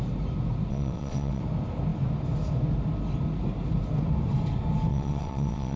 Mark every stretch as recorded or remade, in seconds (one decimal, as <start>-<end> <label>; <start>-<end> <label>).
0.0-0.7 recorded; 0.7-1.4 remade; 1.4-4.9 recorded; 4.9-5.8 remade